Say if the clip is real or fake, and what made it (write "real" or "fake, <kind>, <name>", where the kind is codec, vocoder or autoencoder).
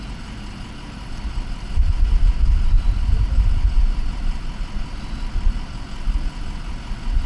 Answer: real